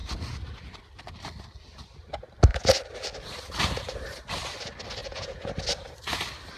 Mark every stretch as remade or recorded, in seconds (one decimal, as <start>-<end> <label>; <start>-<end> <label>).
0.0-5.0 recorded; 5.0-5.5 remade; 5.5-6.6 recorded